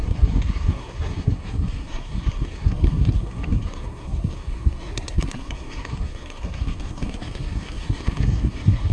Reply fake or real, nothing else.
fake